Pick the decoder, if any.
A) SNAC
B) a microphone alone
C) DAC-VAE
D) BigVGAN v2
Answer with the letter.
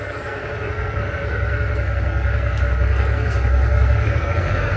A